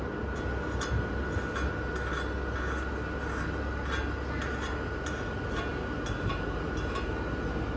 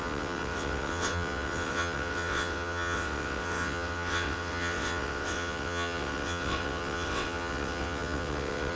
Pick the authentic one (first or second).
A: first